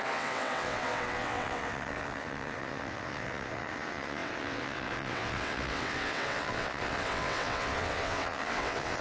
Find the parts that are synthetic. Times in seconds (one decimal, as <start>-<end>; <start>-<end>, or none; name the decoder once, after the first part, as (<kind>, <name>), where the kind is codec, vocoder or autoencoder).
0.0-9.0 (vocoder, WaveNeXt)